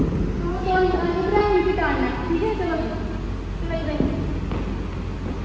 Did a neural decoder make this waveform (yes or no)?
no